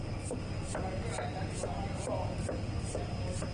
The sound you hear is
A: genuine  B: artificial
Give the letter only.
A